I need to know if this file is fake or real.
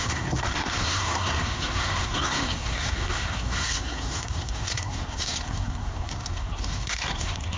fake